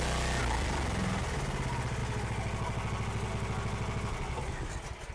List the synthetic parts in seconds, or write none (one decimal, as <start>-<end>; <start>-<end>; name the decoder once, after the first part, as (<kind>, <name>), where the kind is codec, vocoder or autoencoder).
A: none